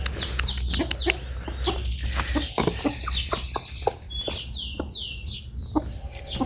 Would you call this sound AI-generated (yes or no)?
no